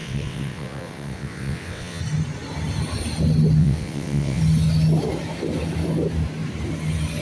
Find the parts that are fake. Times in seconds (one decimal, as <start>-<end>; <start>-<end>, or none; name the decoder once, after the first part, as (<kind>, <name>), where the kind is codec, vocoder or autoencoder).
0.0-2.0 (vocoder, WaveNeXt); 3.6-4.4